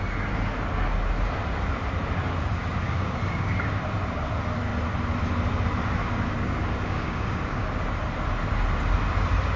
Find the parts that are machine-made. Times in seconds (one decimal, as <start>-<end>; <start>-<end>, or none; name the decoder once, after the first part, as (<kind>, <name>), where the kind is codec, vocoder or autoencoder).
2.4-3.6 (codec, DAC); 6.0-7.8